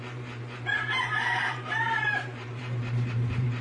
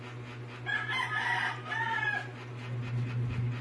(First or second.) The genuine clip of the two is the second